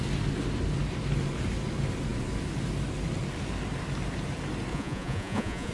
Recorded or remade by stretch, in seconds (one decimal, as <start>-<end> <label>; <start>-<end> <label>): 0.0-4.7 recorded; 4.7-5.7 remade